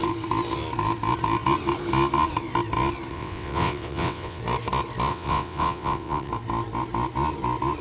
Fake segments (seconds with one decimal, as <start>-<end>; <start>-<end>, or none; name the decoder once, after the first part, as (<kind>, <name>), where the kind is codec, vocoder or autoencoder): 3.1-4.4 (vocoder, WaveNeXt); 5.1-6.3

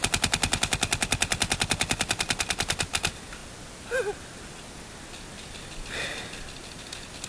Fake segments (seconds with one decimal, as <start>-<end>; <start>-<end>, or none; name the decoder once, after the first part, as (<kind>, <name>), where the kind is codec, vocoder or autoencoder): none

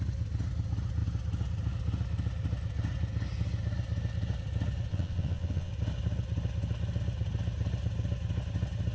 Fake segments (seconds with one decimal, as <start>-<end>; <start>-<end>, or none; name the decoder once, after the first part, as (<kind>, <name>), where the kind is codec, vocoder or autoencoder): 4.9-5.7 (vocoder, WaveNeXt)